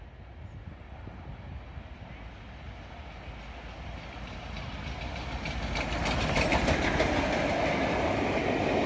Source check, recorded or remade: recorded